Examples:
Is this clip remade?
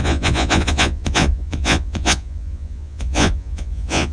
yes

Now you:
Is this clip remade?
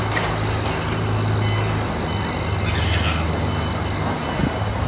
no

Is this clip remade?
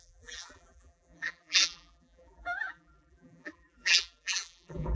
yes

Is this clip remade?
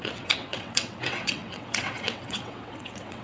yes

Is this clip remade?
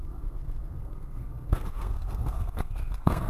yes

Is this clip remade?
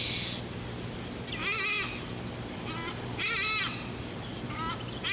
no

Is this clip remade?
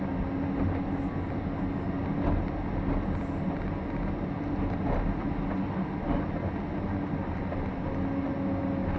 no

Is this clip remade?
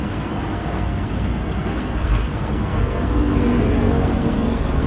yes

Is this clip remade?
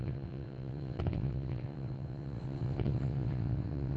yes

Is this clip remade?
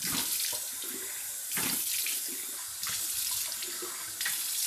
no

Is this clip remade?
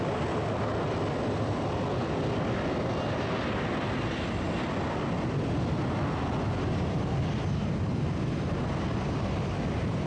no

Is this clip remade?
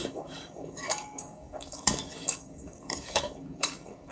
yes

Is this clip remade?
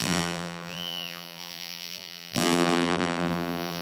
yes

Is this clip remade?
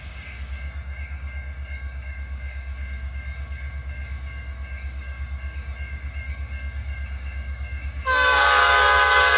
yes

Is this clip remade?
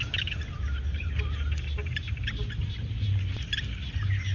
no